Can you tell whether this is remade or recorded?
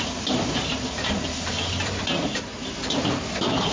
remade